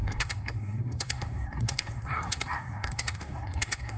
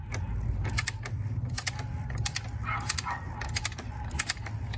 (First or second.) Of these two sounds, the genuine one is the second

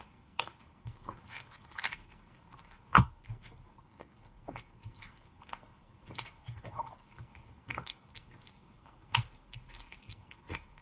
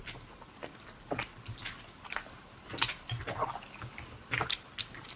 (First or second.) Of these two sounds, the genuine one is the second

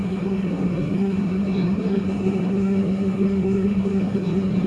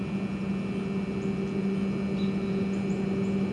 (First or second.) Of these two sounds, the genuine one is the second